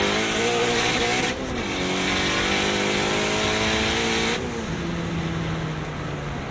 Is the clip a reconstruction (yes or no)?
no